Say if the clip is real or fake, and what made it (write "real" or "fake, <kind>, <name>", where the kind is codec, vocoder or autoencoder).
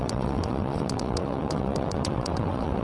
fake, vocoder, WaveNeXt